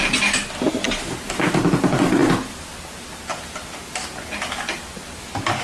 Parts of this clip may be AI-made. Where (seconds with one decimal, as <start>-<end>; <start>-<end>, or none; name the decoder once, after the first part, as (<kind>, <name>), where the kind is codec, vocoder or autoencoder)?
none